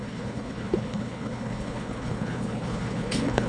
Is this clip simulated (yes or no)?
yes